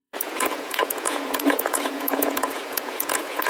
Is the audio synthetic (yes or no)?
yes